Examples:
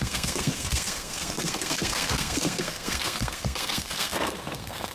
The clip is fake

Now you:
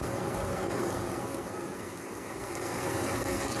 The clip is fake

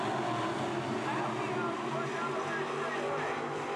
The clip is real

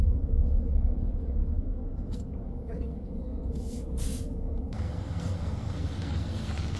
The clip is fake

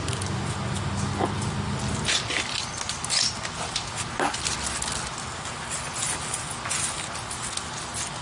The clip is real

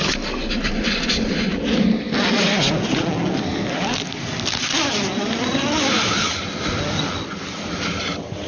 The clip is real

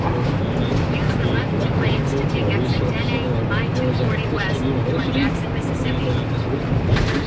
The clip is real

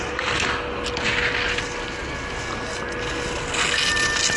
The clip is real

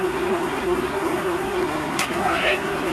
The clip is fake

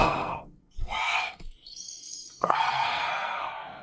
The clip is fake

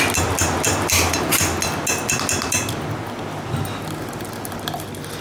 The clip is real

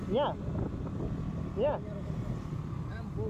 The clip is real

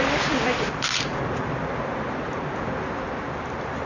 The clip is real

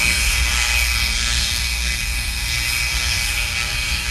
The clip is fake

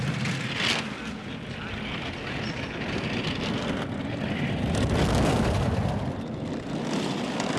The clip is real